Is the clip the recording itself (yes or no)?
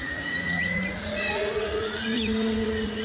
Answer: no